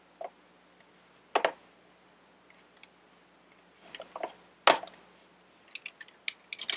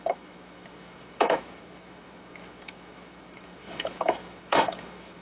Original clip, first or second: first